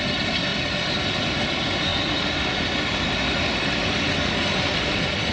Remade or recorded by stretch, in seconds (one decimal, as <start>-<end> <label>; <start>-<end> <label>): 0.0-5.3 recorded